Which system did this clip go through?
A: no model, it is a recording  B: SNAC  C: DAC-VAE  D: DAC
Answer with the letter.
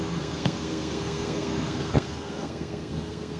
B